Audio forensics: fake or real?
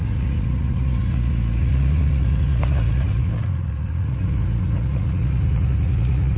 fake